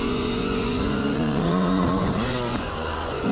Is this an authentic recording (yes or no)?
no